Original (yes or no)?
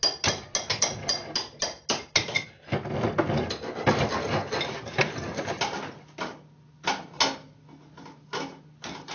yes